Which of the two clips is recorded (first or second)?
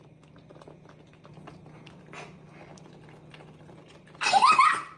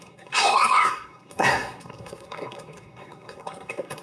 first